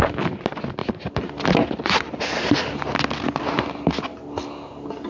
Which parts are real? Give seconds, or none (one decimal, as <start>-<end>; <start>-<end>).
0.0-5.1

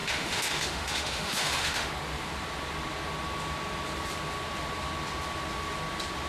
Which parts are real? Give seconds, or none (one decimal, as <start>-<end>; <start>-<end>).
1.9-6.3